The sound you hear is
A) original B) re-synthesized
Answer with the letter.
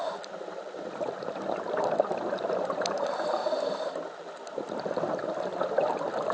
A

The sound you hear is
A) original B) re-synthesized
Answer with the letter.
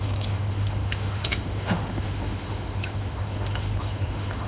B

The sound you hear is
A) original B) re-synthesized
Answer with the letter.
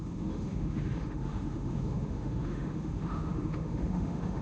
B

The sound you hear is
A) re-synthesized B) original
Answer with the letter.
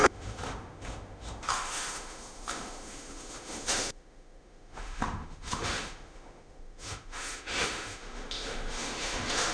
A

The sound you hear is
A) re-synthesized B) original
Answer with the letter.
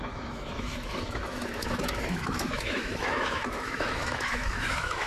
A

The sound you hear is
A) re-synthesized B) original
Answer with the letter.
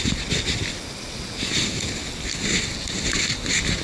B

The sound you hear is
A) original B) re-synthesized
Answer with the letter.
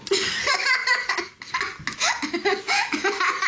A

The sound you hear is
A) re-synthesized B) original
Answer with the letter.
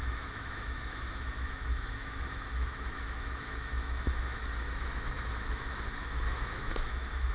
A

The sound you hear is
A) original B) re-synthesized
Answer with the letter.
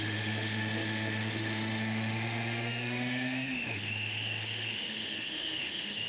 B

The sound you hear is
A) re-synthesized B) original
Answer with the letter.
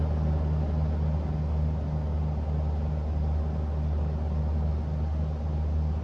B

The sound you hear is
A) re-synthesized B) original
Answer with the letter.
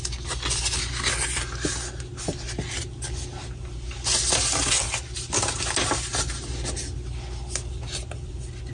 B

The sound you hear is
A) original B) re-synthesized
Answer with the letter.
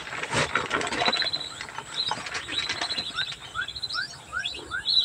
A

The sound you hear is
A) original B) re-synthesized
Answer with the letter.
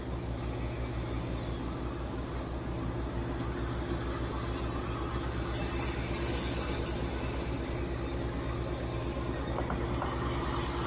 A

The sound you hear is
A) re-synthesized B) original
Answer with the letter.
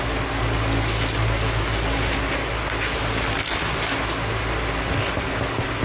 B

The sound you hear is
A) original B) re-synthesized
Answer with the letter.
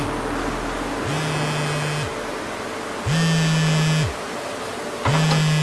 A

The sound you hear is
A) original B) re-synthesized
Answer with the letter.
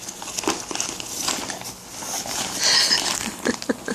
A